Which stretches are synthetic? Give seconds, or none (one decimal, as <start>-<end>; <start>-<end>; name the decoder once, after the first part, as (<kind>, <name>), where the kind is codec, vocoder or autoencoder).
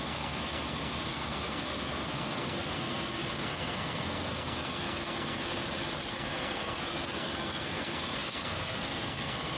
0.0-5.5 (codec, SNAC); 6.1-9.6